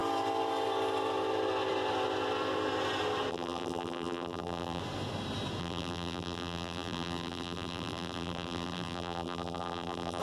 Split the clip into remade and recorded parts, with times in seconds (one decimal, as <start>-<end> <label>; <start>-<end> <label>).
0.0-3.3 recorded; 3.3-4.8 remade; 4.8-5.6 recorded; 5.6-10.2 remade